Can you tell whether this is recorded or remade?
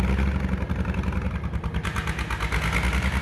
recorded